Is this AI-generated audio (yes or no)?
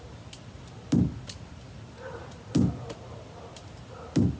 no